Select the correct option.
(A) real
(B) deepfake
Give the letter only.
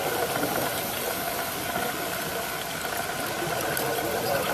A